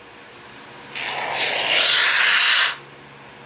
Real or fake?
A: real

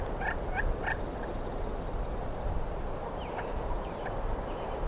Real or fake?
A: real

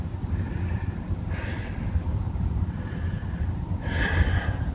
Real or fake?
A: real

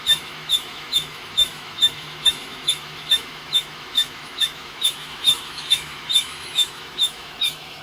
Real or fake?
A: fake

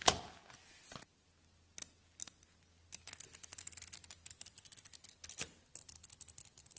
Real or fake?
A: real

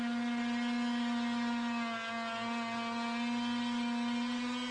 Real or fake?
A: real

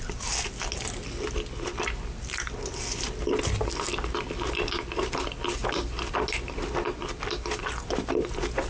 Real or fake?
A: real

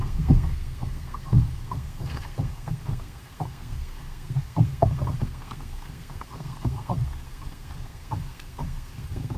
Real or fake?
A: fake